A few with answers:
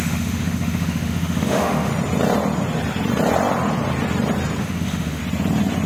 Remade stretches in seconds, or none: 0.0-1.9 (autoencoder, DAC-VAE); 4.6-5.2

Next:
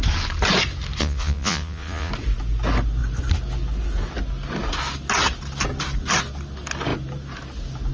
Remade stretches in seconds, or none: 1.0-2.1 (vocoder, Vocos)

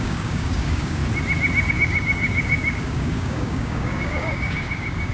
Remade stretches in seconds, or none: 0.0-1.0 (codec, DAC); 1.7-5.1